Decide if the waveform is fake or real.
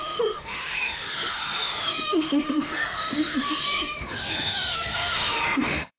fake